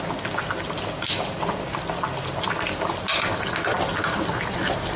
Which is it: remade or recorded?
recorded